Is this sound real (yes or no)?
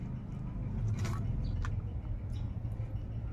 yes